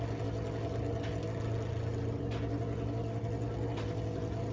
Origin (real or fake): real